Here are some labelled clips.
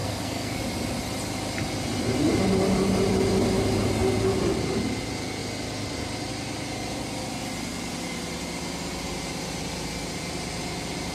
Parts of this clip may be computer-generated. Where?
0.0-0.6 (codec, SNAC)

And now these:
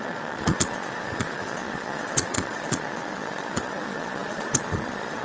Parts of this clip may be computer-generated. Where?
0.0-5.2 (vocoder, Vocos)

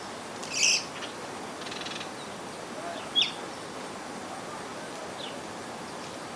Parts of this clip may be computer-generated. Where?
none

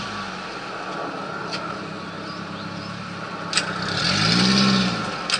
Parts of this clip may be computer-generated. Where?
1.4-4.0 (vocoder, BigVGAN v2)

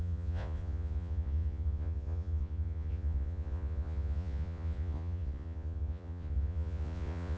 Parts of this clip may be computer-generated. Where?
0.0-7.4 (vocoder, Vocos)

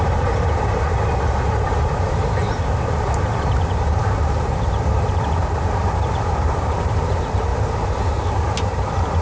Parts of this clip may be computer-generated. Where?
0.0-7.5 (vocoder, BigVGAN v2); 8.1-9.2

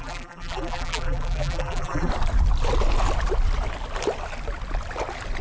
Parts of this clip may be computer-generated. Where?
0.0-2.1 (vocoder, BigVGAN v2)